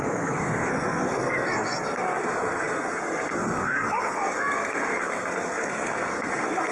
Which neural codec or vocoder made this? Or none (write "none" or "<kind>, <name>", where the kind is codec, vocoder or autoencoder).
codec, SNAC